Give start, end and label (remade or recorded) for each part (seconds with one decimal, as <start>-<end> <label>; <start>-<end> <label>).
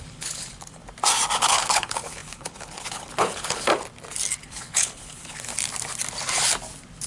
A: 0.0-0.8 remade; 0.8-1.4 recorded; 1.4-3.7 remade; 3.7-4.4 recorded; 4.4-5.5 remade; 5.5-7.1 recorded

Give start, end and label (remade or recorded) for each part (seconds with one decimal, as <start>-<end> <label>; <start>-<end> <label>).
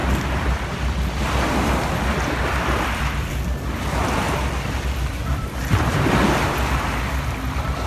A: 0.0-3.3 remade; 3.3-5.3 recorded; 5.3-6.2 remade; 6.2-7.9 recorded